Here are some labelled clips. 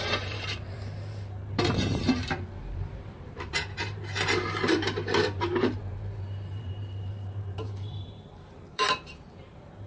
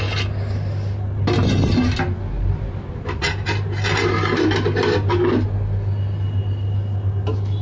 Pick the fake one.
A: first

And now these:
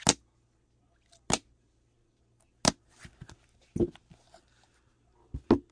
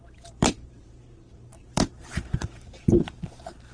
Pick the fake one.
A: second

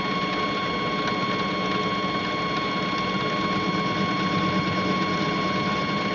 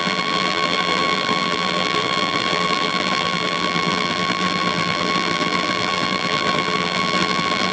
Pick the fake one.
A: second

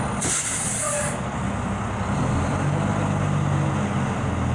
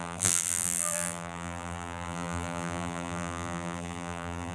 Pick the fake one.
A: second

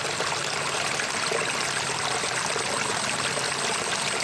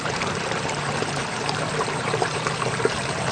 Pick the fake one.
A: second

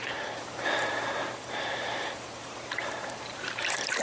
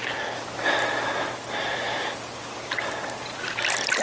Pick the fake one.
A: first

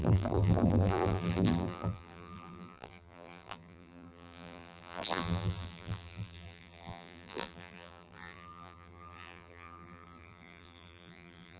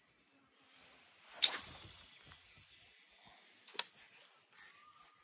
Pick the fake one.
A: first